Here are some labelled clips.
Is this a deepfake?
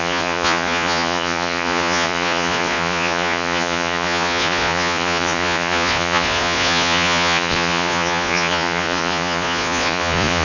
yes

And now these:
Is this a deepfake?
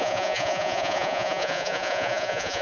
yes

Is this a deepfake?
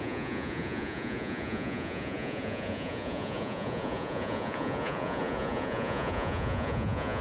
yes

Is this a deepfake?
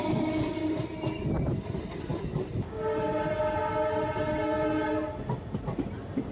no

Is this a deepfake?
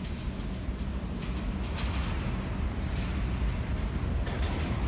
no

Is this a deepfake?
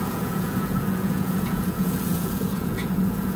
yes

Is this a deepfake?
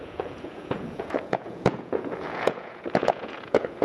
yes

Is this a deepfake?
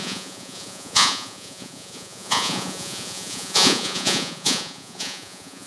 yes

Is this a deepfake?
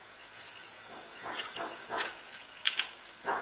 yes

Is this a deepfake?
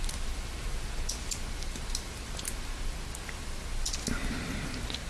no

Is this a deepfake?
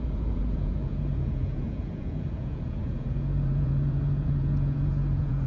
yes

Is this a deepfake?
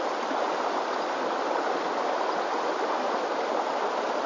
no